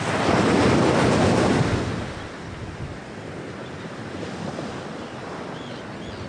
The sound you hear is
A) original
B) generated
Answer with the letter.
A